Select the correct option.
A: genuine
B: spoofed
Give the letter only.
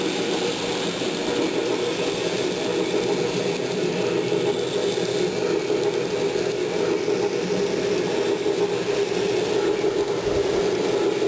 A